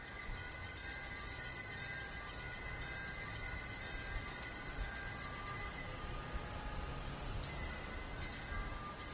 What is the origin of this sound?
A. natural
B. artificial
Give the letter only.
A